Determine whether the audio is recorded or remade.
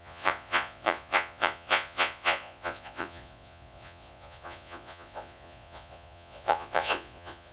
remade